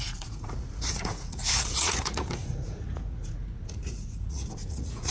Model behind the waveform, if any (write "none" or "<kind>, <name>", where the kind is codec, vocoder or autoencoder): vocoder, Vocos